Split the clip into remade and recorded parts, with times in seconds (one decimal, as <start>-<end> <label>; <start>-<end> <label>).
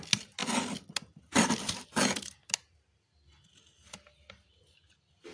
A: 0.0-5.3 recorded